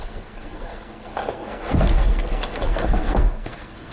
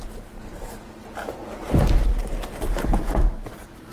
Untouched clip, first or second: second